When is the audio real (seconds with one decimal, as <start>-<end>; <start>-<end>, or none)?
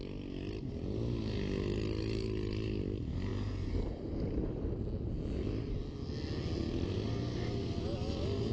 0.0-8.5